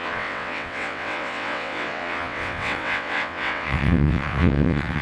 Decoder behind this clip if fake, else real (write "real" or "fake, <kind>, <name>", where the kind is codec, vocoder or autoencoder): fake, vocoder, WaveNeXt